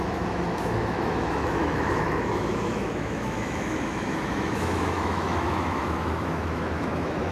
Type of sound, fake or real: fake